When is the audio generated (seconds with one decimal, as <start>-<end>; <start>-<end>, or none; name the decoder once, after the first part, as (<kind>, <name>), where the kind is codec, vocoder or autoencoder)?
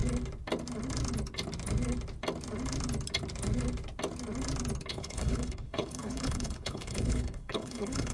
4.9-8.1 (codec, HILCodec)